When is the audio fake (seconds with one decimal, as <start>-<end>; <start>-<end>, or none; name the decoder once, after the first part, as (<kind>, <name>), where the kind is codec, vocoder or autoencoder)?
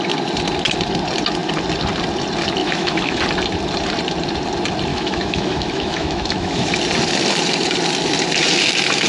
2.6-3.2 (autoencoder, DAC-VAE); 4.9-6.7